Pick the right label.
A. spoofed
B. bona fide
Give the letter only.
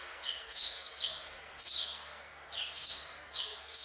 A